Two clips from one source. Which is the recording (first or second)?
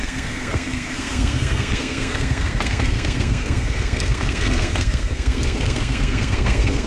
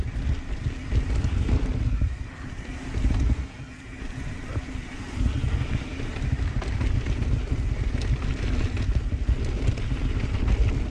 second